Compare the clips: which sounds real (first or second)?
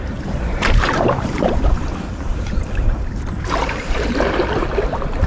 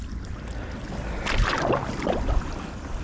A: second